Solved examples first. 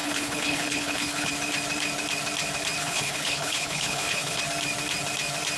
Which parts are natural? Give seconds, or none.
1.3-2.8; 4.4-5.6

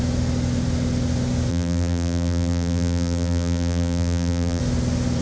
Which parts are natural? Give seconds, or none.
0.0-1.5; 4.6-5.2

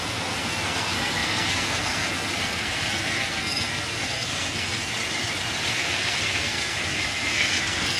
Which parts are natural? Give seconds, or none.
4.9-5.7

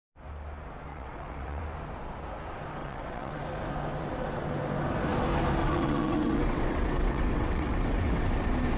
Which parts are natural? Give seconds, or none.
0.0-0.9; 1.6-2.8; 3.4-5.6; 8.2-8.8

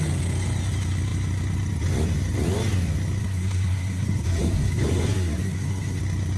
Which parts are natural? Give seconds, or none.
0.0-3.2; 6.0-6.4

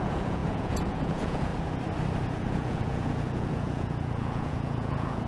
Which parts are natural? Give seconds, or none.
1.5-2.5